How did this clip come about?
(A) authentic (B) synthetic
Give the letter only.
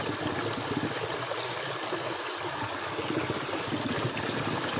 A